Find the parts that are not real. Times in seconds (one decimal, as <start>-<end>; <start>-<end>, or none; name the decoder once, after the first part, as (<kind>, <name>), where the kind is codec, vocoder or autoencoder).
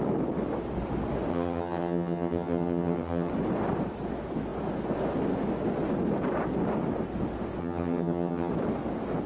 1.3-3.3 (vocoder, HiFi-GAN); 7.6-8.5